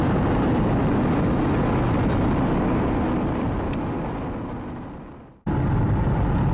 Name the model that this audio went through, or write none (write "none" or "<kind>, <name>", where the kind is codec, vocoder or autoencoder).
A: none